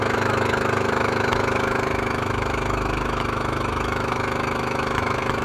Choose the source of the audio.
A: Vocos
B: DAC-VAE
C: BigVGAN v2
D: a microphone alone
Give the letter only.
B